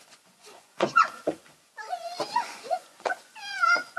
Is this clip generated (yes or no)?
yes